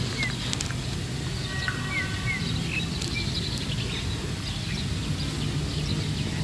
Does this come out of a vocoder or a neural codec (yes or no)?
no